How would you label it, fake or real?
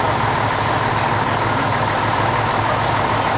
real